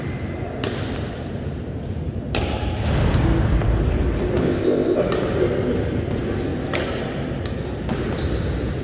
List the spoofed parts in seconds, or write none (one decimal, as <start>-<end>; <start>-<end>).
4.4-5.0